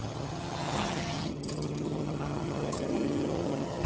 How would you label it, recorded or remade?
remade